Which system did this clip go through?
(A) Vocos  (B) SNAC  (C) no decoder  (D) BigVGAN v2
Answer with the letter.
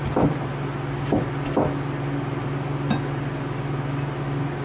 C